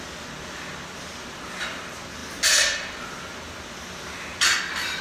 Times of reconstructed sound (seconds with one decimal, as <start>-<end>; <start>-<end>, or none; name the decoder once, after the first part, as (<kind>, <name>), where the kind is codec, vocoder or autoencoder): none

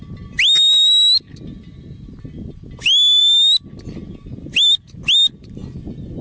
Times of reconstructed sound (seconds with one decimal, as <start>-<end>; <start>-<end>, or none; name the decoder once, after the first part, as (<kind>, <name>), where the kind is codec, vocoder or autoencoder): none

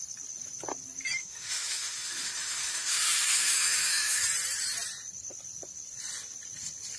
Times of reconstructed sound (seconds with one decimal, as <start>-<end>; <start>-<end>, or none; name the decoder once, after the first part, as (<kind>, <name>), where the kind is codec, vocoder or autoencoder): 1.2-4.2 (autoencoder, DAC-VAE)